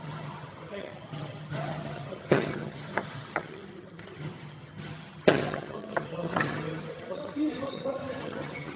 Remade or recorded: remade